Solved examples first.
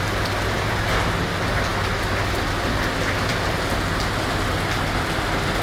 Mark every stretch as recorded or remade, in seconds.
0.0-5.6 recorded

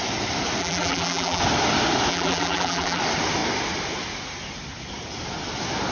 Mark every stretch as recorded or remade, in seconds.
0.0-0.6 recorded; 0.6-1.4 remade; 1.4-2.1 recorded; 2.1-3.0 remade; 3.0-5.9 recorded

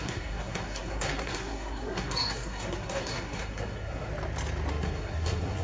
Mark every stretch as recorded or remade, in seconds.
0.0-4.1 remade; 4.1-4.7 recorded; 4.7-5.6 remade

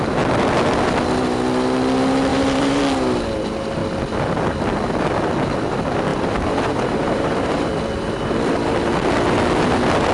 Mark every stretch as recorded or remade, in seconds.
0.0-2.3 recorded; 2.3-2.8 remade; 2.8-6.1 recorded; 6.1-7.7 remade; 7.7-10.1 recorded

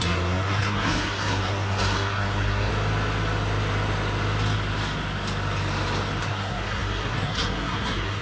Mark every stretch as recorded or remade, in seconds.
0.0-2.7 remade; 2.7-6.2 recorded; 6.2-8.2 remade

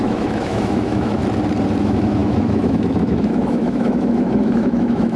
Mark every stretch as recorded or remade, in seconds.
0.0-1.2 remade; 1.2-1.8 recorded; 1.8-5.2 remade

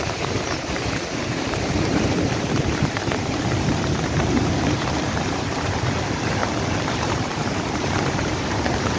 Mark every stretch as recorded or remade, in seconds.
0.0-6.4 remade; 6.4-6.9 recorded; 6.9-9.0 remade

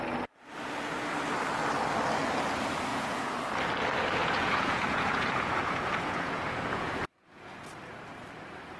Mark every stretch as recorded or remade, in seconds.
0.0-2.9 recorded; 2.9-3.4 remade; 3.4-4.2 recorded; 4.2-7.7 remade; 7.7-8.8 recorded